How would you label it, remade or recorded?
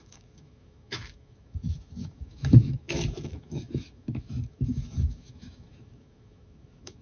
remade